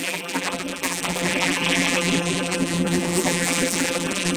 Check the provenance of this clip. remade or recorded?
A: remade